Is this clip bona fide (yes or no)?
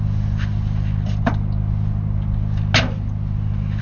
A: yes